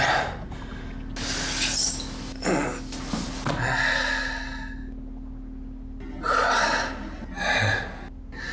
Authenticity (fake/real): real